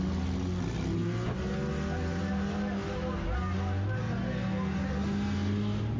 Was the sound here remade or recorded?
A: recorded